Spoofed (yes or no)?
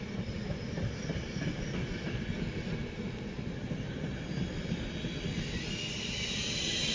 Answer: no